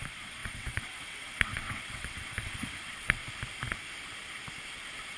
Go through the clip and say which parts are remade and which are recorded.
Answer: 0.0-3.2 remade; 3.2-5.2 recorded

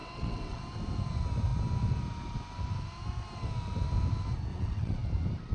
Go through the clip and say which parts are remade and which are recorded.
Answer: 0.0-0.6 remade; 0.6-4.5 recorded; 4.5-5.0 remade; 5.0-5.5 recorded

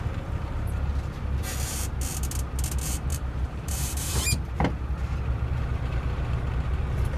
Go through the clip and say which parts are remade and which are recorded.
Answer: 0.0-3.1 recorded; 3.1-4.1 remade; 4.1-7.2 recorded

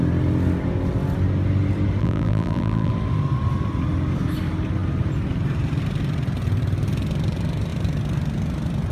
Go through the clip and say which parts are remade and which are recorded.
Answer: 0.0-2.0 recorded; 2.0-2.9 remade; 2.9-8.9 recorded

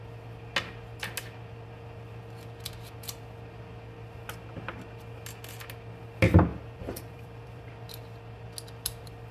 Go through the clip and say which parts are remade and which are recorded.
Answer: 0.0-6.5 recorded; 6.5-7.7 remade; 7.7-9.3 recorded

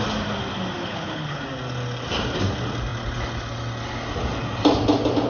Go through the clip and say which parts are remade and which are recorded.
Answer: 0.0-0.8 recorded; 0.8-1.4 remade; 1.4-5.3 recorded

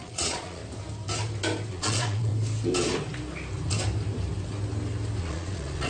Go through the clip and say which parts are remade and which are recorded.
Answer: 0.0-0.6 remade; 0.6-1.7 recorded; 1.7-2.3 remade; 2.3-5.2 recorded; 5.2-5.9 remade